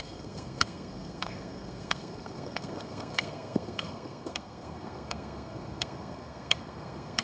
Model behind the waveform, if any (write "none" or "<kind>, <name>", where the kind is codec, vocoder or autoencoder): codec, SNAC